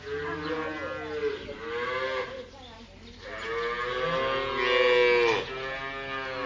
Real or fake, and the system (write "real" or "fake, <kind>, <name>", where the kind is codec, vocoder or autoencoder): real